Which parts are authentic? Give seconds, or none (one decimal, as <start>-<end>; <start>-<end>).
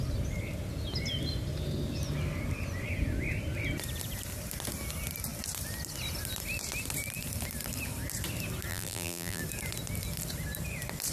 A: 0.0-8.7; 9.4-11.1